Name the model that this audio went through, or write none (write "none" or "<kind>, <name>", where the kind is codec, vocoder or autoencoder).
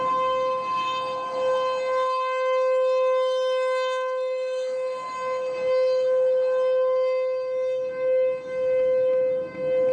autoencoder, DAC-VAE